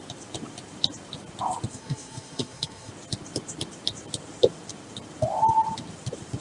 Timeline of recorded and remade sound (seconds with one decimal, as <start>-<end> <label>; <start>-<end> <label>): 0.0-1.7 recorded; 1.7-2.9 remade; 2.9-6.4 recorded